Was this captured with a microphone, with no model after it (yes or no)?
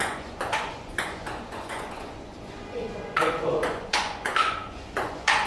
no